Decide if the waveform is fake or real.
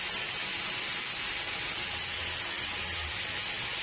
real